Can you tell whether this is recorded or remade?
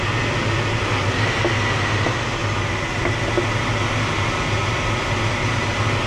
recorded